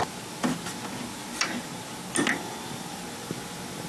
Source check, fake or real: real